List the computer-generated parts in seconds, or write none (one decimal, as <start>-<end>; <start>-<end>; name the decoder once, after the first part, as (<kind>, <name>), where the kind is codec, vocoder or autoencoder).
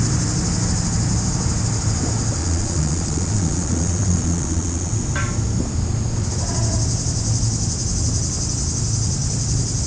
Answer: 2.4-4.9 (vocoder, Vocos)